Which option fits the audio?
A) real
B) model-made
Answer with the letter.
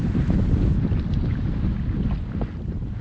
A